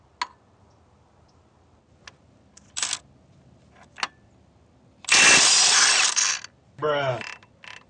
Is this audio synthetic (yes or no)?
no